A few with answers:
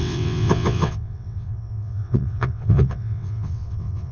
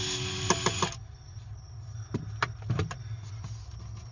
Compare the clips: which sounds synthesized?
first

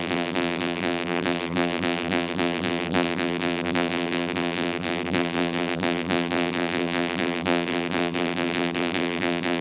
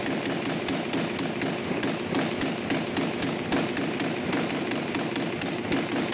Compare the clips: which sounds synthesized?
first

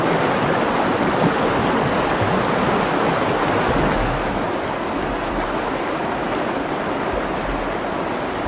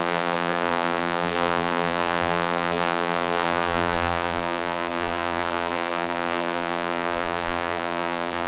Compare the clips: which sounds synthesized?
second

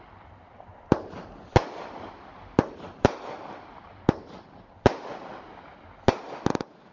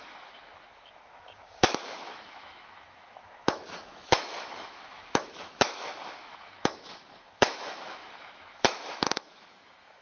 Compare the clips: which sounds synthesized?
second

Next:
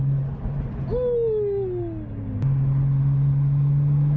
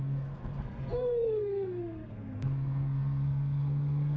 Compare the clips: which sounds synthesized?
second